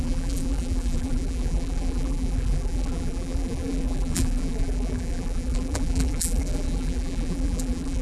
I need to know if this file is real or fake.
fake